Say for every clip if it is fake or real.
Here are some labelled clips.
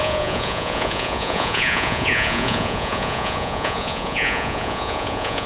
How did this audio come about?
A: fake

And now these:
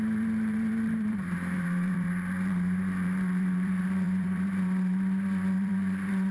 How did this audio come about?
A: fake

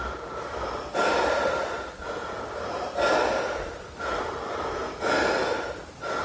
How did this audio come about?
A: real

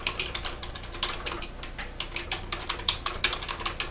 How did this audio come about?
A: real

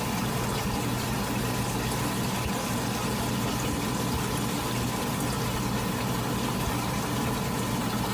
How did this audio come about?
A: real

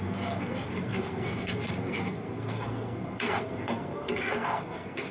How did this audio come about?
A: fake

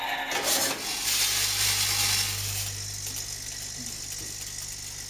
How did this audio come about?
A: real